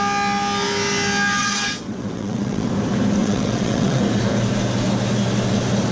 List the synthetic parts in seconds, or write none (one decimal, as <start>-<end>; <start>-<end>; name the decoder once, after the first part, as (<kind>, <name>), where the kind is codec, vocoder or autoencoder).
1.4-2.7 (vocoder, WaveNeXt); 3.2-4.0